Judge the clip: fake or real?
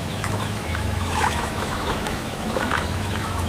fake